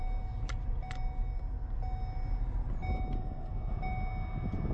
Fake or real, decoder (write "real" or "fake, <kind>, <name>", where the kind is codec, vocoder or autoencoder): real